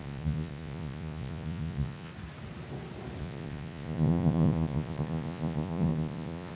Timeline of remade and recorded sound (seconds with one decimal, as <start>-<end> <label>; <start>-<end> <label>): 0.0-2.1 remade; 2.1-3.2 recorded; 3.2-6.5 remade